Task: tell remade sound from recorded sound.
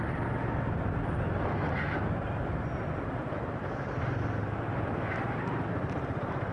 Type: recorded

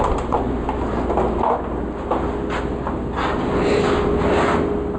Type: recorded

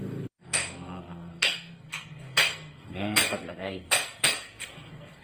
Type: remade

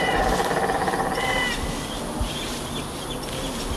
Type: recorded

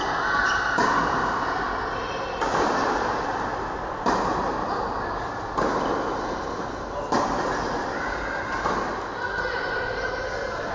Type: recorded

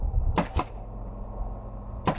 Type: recorded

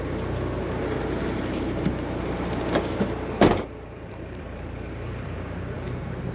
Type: remade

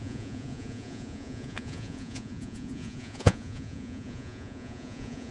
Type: remade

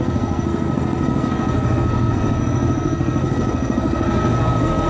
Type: remade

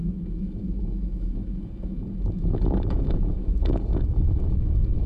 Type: remade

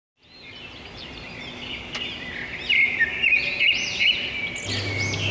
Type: recorded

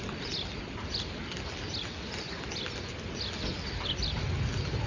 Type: recorded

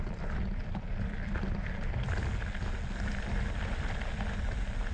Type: recorded